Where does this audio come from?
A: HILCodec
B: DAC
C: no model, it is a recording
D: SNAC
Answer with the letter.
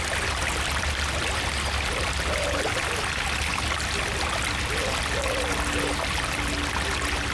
C